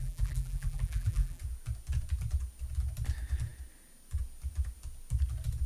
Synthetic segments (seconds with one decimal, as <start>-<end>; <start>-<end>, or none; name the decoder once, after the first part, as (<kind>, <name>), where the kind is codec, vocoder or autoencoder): 0.0-1.4 (vocoder, BigVGAN v2)